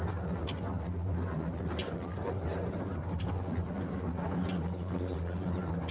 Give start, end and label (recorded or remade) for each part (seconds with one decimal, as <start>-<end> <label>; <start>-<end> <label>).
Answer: 0.0-2.1 recorded; 2.1-3.3 remade; 3.3-5.9 recorded